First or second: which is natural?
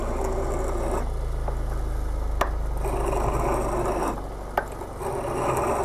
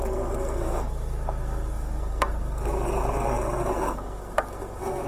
first